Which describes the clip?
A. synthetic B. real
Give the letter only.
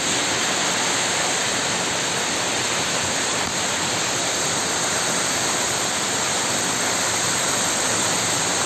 A